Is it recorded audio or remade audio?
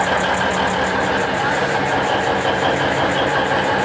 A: recorded